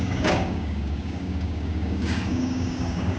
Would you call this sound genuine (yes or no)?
no